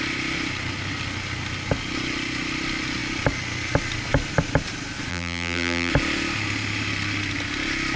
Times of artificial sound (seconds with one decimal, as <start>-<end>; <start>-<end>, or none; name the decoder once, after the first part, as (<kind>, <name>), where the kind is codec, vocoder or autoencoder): 5.1-5.9 (vocoder, BigVGAN v2)